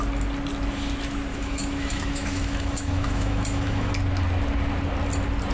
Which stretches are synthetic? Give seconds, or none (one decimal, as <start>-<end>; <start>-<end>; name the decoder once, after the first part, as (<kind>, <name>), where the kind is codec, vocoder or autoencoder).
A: 1.3-3.9 (autoencoder, DAC-VAE)